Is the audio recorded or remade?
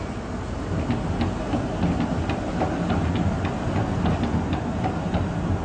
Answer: recorded